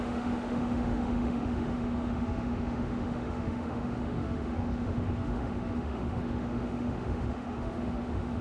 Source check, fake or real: fake